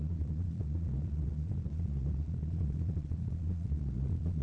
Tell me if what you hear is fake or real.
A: fake